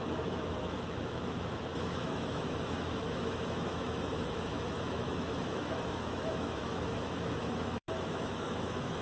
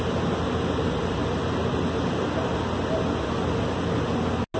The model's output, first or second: first